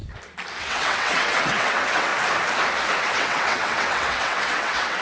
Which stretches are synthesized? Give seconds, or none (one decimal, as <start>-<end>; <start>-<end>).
0.6-2.1; 3.0-5.0